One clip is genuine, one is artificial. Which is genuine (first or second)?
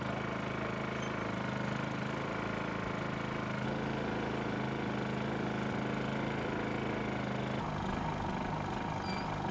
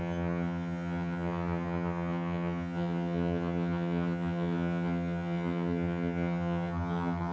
first